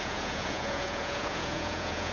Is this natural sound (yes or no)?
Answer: no